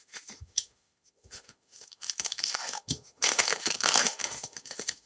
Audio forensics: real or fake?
fake